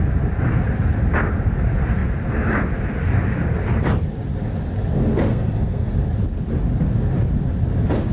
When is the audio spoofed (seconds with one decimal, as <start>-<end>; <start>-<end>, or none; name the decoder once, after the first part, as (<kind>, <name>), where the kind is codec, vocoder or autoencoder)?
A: 5.3-5.9 (codec, SNAC)